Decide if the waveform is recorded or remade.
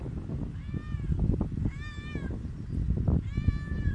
recorded